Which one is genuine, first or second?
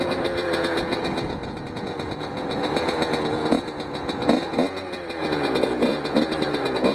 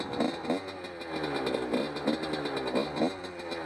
second